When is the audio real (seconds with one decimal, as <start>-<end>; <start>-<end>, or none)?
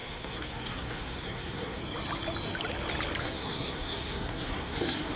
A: 1.8-3.2